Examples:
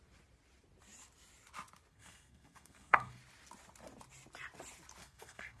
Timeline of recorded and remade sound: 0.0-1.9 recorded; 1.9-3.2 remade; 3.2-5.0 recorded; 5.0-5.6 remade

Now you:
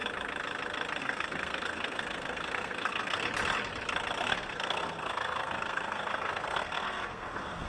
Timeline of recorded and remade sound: 0.0-1.0 recorded; 1.0-3.2 remade; 3.2-4.2 recorded; 4.2-7.7 remade

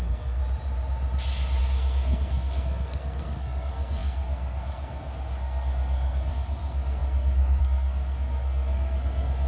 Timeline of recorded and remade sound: 0.0-0.4 remade; 0.4-1.6 recorded; 1.6-9.5 remade

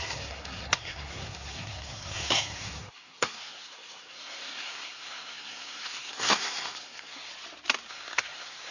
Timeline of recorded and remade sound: 0.0-7.3 remade; 7.3-7.9 recorded; 7.9-8.7 remade

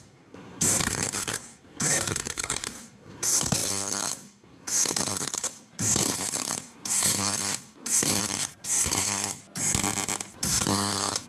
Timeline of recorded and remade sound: 0.0-9.4 remade; 9.4-10.3 recorded; 10.3-11.3 remade

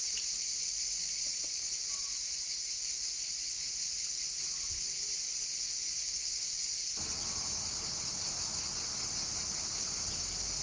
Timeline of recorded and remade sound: 0.0-10.6 recorded

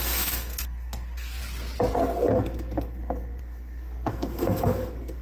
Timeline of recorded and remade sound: 0.0-1.4 remade; 1.4-1.9 recorded; 1.9-5.2 remade